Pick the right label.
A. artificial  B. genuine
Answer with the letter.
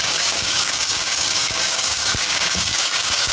A